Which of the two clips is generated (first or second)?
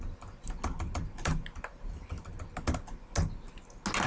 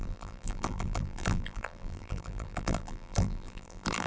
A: second